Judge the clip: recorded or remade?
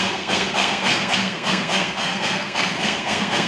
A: remade